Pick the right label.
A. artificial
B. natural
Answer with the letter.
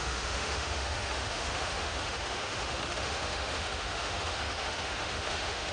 A